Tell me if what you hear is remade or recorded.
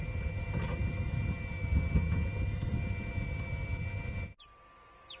recorded